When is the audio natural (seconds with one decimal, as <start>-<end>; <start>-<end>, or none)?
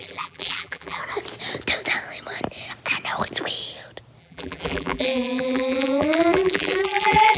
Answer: 1.0-4.2